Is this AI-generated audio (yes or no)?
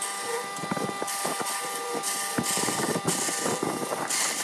no